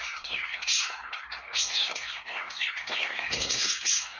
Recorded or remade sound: remade